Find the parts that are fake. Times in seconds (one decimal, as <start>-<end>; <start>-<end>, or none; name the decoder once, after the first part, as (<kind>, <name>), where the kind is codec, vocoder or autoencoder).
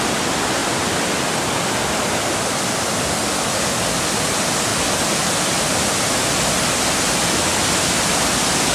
none